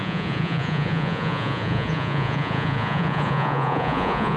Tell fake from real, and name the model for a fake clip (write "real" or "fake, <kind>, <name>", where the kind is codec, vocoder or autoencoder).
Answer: fake, vocoder, Vocos